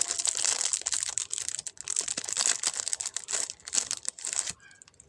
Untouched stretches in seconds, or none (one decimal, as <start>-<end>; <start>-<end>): 0.0-5.1